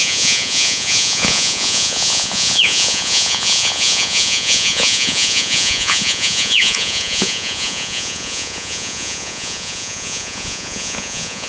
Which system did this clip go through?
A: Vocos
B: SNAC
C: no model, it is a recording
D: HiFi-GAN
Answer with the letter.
A